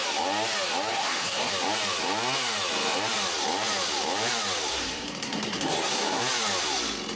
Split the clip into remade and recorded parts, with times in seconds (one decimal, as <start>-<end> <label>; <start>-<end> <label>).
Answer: 0.0-0.9 recorded; 0.9-1.5 remade; 1.5-4.7 recorded; 4.7-6.2 remade; 6.2-7.2 recorded